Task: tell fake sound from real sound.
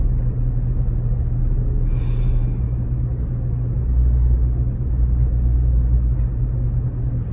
real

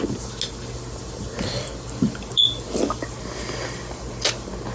real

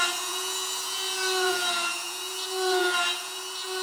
fake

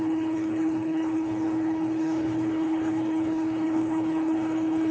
fake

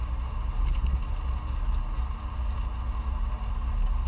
real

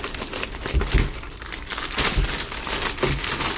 real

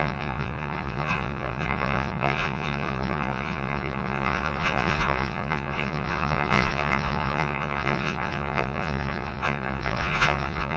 fake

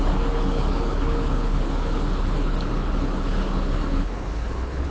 fake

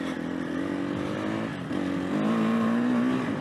real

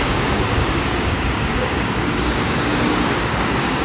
fake